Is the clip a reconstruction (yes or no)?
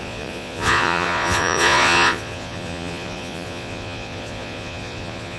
yes